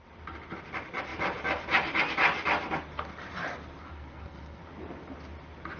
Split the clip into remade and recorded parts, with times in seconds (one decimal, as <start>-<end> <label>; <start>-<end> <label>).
0.0-3.8 recorded; 3.8-4.6 remade; 4.6-5.8 recorded

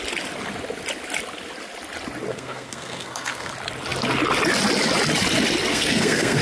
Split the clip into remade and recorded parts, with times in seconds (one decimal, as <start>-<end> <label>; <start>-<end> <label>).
0.0-2.3 recorded; 2.3-3.5 remade; 3.5-5.7 recorded; 5.7-6.4 remade

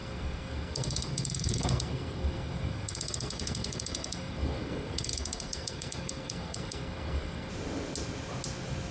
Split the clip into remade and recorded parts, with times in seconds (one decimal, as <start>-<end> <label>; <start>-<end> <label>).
0.0-7.5 remade; 7.5-8.9 recorded

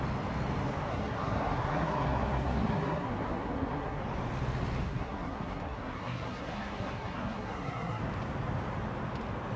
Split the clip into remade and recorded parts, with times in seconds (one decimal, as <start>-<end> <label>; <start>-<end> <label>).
0.0-0.9 recorded; 0.9-4.0 remade; 4.0-4.8 recorded; 4.8-8.0 remade; 8.0-9.6 recorded

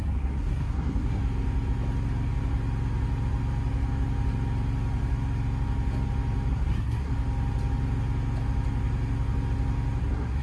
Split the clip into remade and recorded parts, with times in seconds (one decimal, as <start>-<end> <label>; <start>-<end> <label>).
0.0-1.2 remade; 1.2-6.5 recorded; 6.5-7.1 remade; 7.1-10.0 recorded; 10.0-10.4 remade

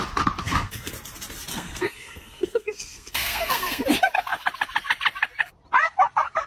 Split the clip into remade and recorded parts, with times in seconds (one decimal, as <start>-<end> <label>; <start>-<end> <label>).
0.0-0.4 recorded; 0.4-0.9 remade; 0.9-1.5 recorded; 1.5-3.8 remade; 3.8-6.5 recorded

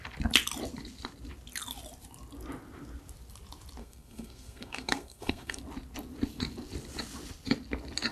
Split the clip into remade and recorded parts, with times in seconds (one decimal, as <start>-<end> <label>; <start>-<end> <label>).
0.0-3.8 recorded; 3.8-5.6 remade; 5.6-8.1 recorded